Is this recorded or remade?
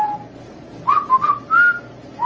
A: recorded